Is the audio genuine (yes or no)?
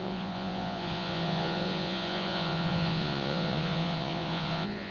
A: no